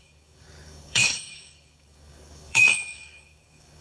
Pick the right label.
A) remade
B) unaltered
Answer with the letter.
A